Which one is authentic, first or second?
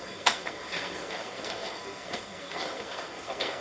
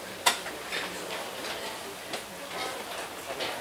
second